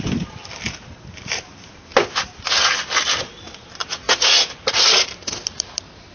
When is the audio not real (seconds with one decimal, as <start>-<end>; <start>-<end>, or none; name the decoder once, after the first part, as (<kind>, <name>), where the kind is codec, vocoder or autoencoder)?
3.8-4.4 (vocoder, Vocos)